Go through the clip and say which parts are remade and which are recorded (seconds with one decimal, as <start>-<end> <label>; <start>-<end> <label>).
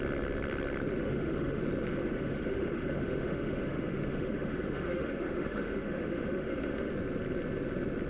0.0-1.0 recorded; 1.0-1.6 remade; 1.6-2.0 recorded; 2.0-6.9 remade; 6.9-8.1 recorded